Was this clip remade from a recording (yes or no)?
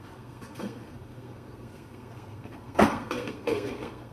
yes